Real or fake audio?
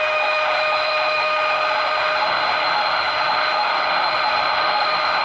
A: fake